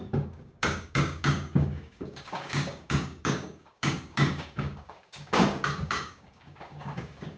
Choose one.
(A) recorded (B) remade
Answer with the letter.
B